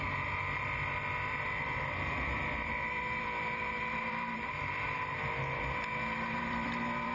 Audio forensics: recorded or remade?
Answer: remade